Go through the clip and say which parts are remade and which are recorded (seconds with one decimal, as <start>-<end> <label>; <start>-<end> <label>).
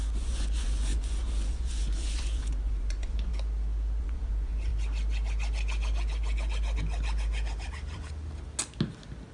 0.0-3.3 remade; 3.3-4.0 recorded; 4.0-4.7 remade; 4.7-9.3 recorded